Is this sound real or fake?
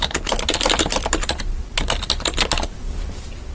real